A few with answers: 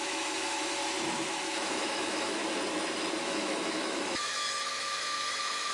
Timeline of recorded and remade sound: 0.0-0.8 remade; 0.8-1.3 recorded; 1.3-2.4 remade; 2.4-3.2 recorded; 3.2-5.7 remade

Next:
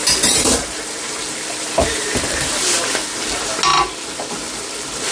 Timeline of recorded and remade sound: 0.0-2.6 remade; 2.6-5.1 recorded

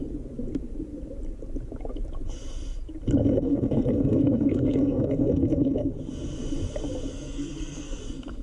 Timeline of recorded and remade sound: 0.0-3.2 recorded; 3.2-5.9 remade; 5.9-7.1 recorded; 7.1-8.0 remade; 8.0-8.4 recorded

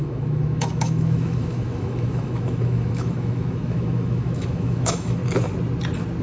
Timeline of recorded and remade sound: 0.0-5.2 remade; 5.2-6.2 recorded

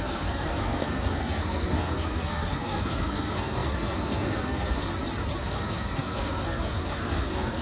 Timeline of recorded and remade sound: 0.0-4.9 remade; 4.9-5.4 recorded; 5.4-7.6 remade